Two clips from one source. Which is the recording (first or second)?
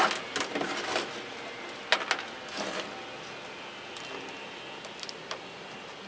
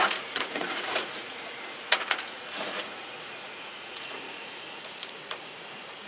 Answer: first